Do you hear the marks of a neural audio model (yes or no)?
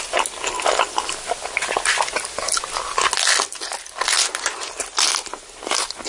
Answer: no